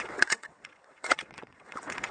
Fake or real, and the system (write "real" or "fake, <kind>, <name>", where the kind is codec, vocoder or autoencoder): fake, vocoder, WaveNeXt